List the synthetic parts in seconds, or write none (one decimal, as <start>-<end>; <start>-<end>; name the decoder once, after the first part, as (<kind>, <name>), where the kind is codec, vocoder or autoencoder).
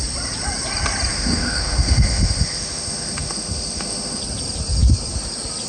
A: 1.1-4.2 (autoencoder, DAC-VAE)